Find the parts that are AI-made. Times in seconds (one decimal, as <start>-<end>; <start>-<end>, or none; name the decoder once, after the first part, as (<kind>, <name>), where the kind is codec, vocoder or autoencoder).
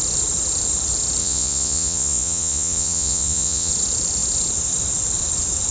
1.2-3.7 (vocoder, Vocos)